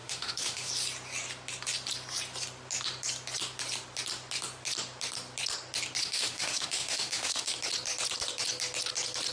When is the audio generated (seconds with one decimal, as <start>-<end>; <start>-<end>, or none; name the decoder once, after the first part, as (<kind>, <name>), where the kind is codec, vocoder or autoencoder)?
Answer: 0.0-0.7 (autoencoder, DAC-VAE); 6.0-7.5